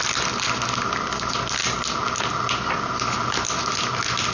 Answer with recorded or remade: recorded